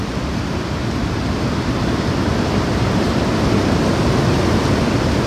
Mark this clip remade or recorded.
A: recorded